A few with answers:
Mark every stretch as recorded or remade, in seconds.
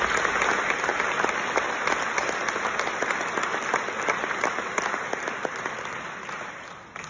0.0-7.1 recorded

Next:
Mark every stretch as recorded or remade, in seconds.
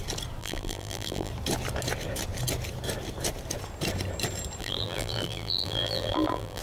0.0-0.4 recorded; 0.4-1.3 remade; 1.3-4.6 recorded; 4.6-6.6 remade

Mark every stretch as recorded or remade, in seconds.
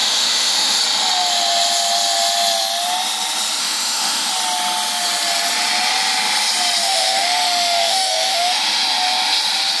0.0-0.8 remade; 0.8-3.6 recorded; 3.6-4.3 remade; 4.3-6.8 recorded; 6.8-8.6 remade; 8.6-9.8 recorded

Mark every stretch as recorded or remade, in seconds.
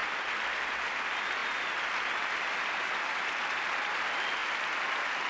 0.0-5.3 recorded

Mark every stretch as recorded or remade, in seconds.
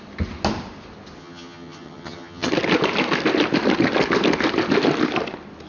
0.0-1.2 recorded; 1.2-2.5 remade; 2.5-5.7 recorded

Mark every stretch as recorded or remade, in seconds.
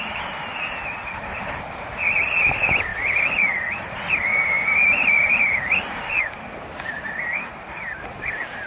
0.0-8.7 recorded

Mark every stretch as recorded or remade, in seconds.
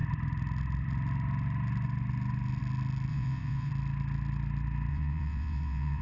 0.0-3.1 recorded; 3.1-3.7 remade; 3.7-4.9 recorded; 4.9-6.0 remade